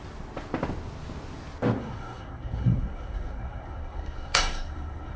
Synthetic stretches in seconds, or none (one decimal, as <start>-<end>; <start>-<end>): 1.8-5.2